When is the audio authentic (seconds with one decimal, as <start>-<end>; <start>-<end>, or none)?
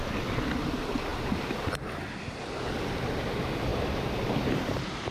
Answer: 0.0-5.1